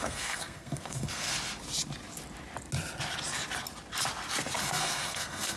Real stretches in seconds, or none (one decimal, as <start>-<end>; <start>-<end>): 1.3-4.6